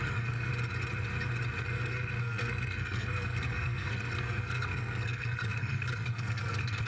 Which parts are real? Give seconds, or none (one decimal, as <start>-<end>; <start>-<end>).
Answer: 0.5-1.6